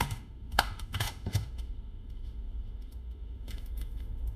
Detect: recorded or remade remade